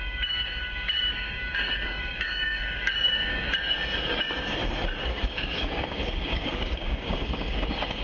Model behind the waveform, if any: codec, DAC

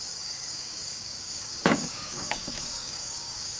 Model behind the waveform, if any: codec, DAC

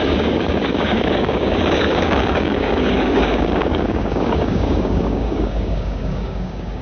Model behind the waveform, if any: codec, DAC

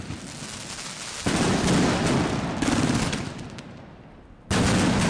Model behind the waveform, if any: none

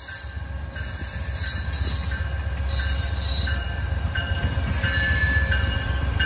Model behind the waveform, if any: none